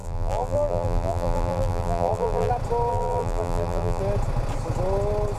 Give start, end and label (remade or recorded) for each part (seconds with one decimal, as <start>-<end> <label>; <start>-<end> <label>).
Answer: 0.0-2.5 remade; 2.5-2.9 recorded; 2.9-4.0 remade; 4.0-5.4 recorded